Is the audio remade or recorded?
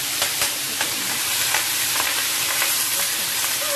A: remade